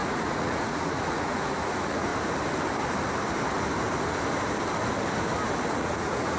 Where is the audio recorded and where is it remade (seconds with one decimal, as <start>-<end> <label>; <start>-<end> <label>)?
0.0-2.1 remade; 2.1-5.7 recorded; 5.7-6.4 remade